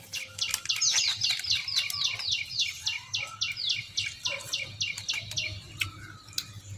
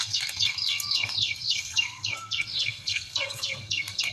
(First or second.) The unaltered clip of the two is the first